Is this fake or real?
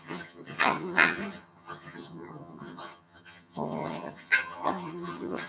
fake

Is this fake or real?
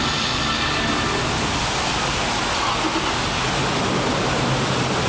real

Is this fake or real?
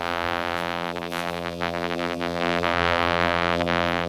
fake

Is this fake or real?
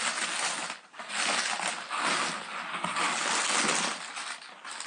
real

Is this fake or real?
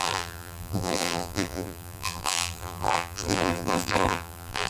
fake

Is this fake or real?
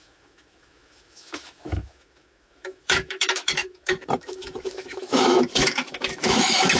fake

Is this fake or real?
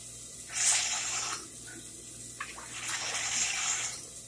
real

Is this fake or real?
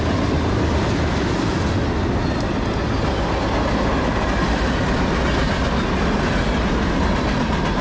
real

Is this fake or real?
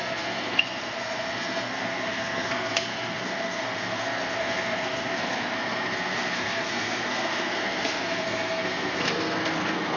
fake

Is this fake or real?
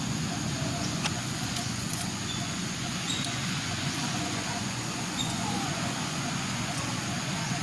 fake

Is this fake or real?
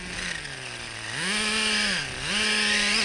real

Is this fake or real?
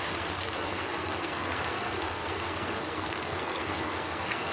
fake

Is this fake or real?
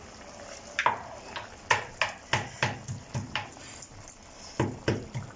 real